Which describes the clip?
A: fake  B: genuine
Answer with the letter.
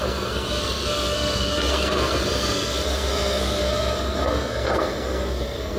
A